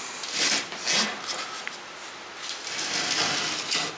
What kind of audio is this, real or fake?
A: real